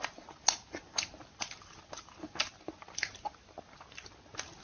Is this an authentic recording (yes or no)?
yes